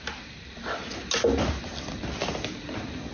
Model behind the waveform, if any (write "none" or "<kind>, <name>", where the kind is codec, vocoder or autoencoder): none